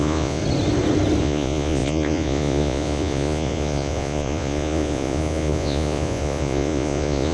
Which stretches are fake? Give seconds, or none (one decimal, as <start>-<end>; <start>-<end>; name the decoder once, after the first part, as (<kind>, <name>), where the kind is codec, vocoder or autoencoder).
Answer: 0.0-0.4 (vocoder, Vocos); 1.2-7.3